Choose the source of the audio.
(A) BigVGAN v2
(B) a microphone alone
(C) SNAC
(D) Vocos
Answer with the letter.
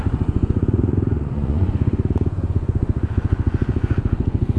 D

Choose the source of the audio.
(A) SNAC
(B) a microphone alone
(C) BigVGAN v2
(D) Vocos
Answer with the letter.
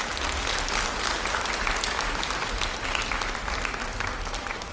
B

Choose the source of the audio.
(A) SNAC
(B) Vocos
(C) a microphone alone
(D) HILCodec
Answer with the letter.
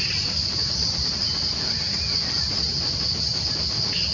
C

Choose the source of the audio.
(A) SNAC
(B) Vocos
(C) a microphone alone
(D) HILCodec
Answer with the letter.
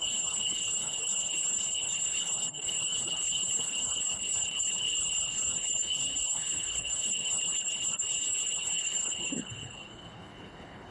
D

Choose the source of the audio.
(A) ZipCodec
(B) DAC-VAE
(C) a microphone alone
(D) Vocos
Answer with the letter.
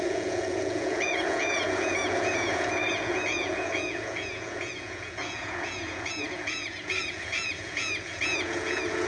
D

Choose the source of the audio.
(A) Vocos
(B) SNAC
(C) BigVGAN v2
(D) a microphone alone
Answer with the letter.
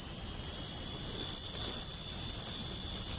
C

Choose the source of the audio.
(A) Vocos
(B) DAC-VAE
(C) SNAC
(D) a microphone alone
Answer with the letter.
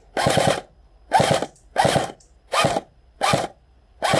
D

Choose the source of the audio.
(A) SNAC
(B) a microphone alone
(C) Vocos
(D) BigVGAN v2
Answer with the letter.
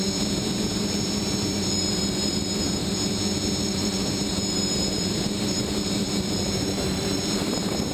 D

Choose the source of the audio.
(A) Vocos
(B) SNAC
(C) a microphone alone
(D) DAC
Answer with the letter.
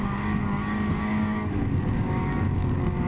D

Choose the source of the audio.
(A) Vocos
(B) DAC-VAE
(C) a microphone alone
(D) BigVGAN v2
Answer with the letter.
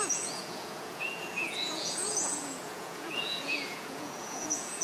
A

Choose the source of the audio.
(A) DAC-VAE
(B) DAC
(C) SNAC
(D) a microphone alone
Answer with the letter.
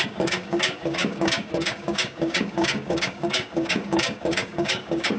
B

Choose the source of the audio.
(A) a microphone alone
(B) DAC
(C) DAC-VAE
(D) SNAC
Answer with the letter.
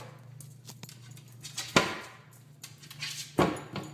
A